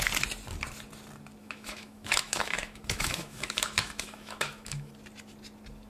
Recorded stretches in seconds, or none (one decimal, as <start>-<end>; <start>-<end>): 0.0-1.4; 4.9-5.9